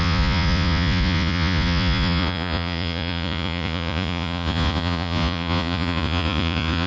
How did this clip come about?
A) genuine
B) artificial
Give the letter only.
B